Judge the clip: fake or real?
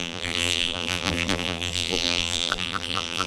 fake